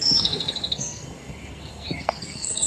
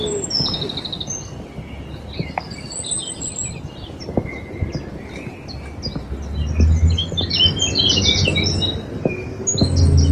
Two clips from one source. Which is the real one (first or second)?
second